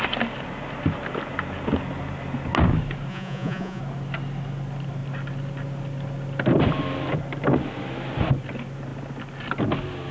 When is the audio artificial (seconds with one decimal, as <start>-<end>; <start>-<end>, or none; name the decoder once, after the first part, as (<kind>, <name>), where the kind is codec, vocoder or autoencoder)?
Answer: 3.1-3.8 (vocoder, Vocos)